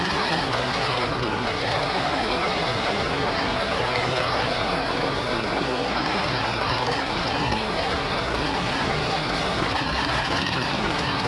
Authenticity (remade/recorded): remade